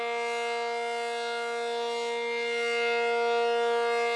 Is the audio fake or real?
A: real